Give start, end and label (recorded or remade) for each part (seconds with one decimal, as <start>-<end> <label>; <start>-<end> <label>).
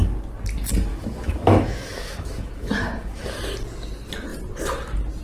0.0-0.9 recorded; 0.9-3.3 remade; 3.3-5.2 recorded